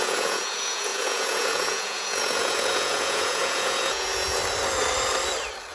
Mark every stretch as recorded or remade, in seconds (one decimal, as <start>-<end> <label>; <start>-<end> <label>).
0.0-4.4 remade; 4.4-5.7 recorded